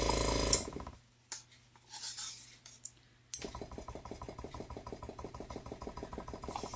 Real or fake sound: real